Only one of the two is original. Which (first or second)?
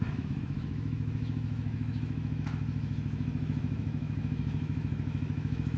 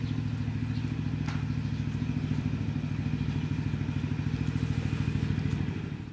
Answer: second